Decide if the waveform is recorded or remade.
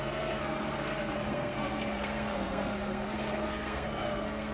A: remade